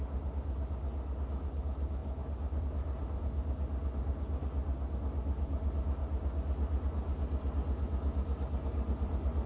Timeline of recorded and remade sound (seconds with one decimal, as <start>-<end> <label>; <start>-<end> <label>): 0.0-9.5 recorded